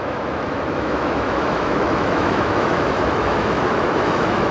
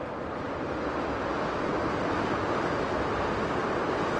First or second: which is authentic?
second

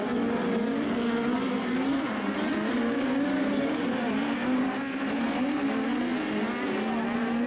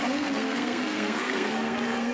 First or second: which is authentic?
first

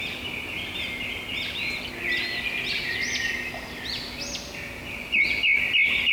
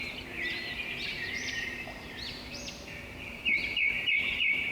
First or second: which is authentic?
first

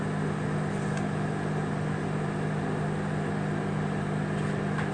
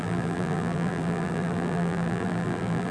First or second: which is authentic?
first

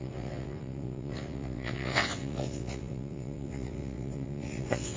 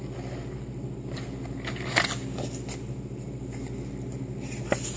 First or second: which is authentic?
second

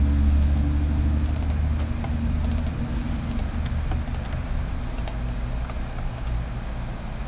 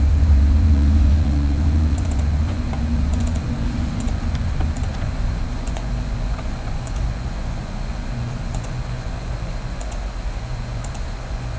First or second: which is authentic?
first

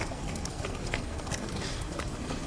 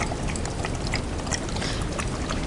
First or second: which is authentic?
second